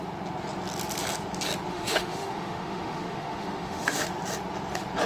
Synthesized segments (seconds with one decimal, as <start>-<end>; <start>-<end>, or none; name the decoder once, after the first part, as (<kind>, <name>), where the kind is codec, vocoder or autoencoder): 1.7-4.0 (autoencoder, DAC-VAE)